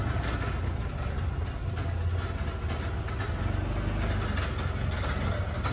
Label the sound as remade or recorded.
recorded